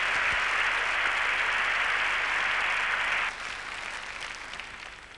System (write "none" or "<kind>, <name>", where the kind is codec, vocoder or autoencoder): none